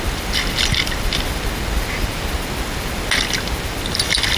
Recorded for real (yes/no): yes